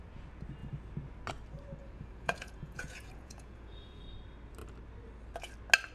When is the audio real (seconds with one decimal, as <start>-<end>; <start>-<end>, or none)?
0.0-1.8; 4.0-5.9